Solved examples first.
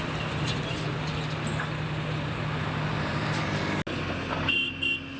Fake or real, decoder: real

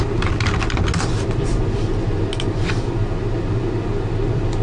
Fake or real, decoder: real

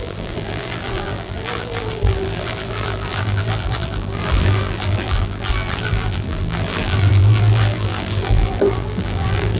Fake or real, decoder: fake, vocoder, BigVGAN v2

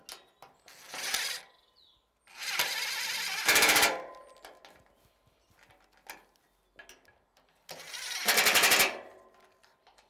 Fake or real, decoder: real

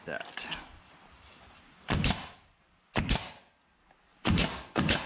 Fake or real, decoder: real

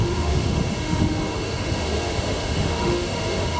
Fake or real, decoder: fake, autoencoder, DAC-VAE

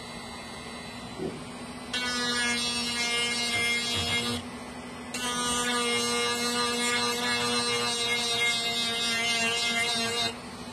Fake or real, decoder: real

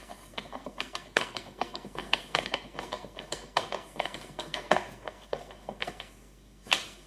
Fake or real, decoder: fake, codec, SNAC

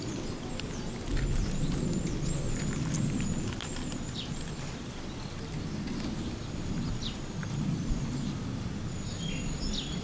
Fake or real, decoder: real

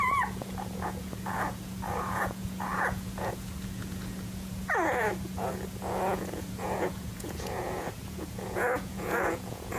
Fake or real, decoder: fake, vocoder, Vocos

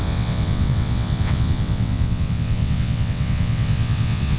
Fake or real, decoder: fake, vocoder, WaveNeXt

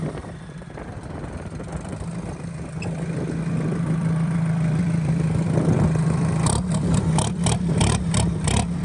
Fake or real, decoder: fake, vocoder, BigVGAN v2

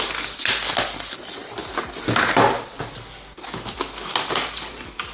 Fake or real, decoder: real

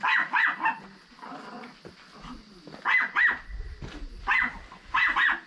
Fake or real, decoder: real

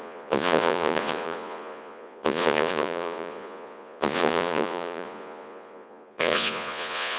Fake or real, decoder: fake, vocoder, Vocos